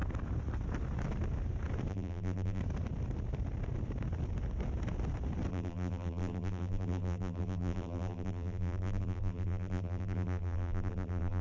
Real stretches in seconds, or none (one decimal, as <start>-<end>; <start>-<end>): 0.0-1.9; 2.6-5.5